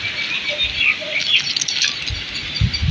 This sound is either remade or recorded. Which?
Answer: recorded